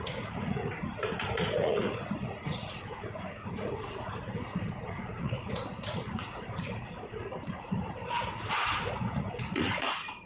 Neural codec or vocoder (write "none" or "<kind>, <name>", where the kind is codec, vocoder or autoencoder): vocoder, Vocos